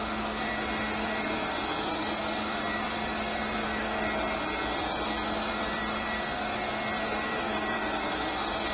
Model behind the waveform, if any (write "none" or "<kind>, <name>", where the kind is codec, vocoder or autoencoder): none